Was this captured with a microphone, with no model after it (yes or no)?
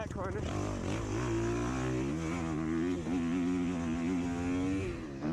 yes